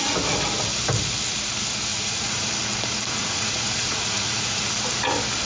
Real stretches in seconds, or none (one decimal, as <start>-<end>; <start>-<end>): 0.0-1.9; 2.5-3.2; 4.6-5.4